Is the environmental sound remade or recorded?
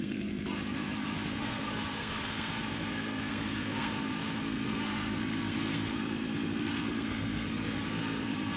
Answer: remade